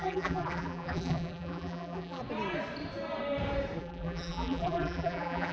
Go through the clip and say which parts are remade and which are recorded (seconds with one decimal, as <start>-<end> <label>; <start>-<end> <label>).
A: 0.0-2.2 remade; 2.2-3.8 recorded; 3.8-5.5 remade